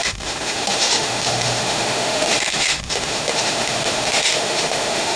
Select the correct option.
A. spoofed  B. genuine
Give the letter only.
A